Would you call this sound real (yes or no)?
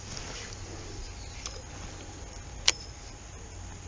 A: yes